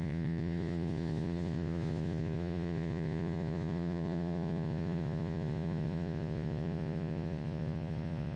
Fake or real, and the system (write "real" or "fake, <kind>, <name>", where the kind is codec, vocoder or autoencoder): fake, vocoder, Vocos